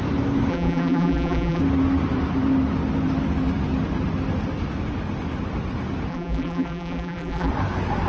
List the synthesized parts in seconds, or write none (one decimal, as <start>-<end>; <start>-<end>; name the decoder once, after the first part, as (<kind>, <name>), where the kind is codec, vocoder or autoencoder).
0.5-1.6 (vocoder, BigVGAN v2); 6.1-7.5